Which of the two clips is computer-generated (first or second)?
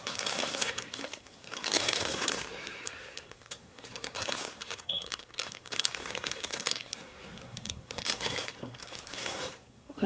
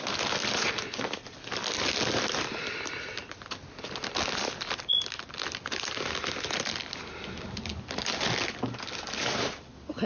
first